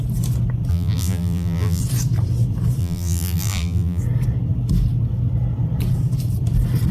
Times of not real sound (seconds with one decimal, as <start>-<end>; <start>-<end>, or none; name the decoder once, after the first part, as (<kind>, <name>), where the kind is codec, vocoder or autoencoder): 0.7-1.8 (vocoder, BigVGAN v2); 2.8-4.0